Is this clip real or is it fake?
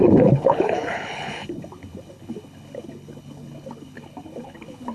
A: fake